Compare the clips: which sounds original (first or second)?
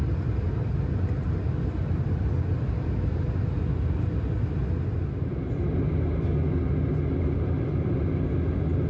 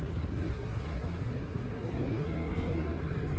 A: first